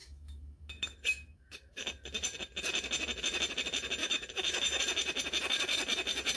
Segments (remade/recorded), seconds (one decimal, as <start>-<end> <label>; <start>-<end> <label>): 0.0-1.9 remade; 1.9-4.0 recorded; 4.0-4.8 remade; 4.8-6.4 recorded